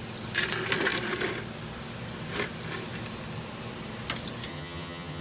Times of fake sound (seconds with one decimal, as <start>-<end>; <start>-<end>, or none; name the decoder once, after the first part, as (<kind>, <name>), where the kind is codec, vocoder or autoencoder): 4.5-5.2 (vocoder, HiFi-GAN)